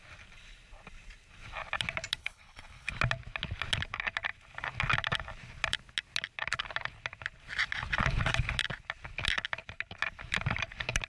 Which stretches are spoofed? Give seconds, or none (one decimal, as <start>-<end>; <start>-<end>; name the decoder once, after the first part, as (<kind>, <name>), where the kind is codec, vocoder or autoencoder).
2.2-2.9 (codec, HILCodec)